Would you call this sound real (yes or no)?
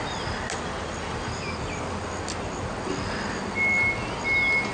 yes